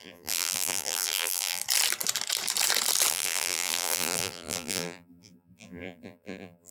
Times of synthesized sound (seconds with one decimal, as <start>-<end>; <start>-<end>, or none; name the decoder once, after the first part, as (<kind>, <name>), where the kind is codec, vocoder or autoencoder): 0.0-1.6 (vocoder, BigVGAN v2); 3.1-6.7